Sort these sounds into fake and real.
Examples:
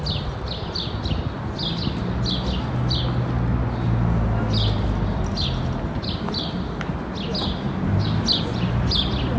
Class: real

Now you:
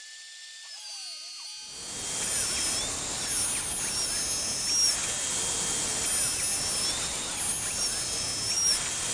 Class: real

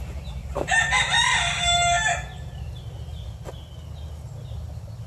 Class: real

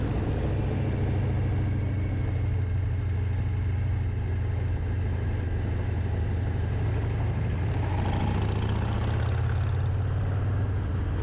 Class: real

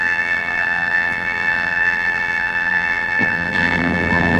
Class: fake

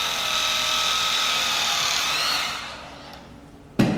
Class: real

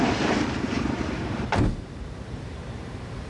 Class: fake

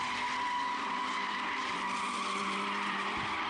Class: fake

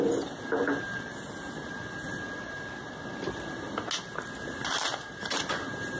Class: real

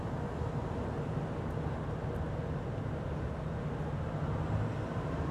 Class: real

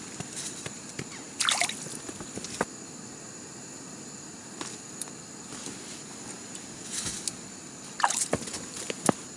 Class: real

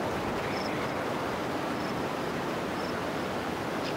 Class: real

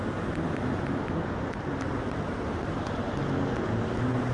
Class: real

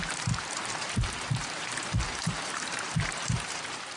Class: fake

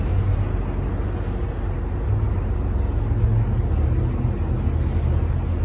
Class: real